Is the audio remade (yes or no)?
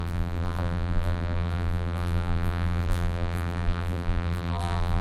yes